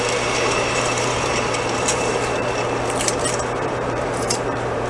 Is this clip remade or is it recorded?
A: remade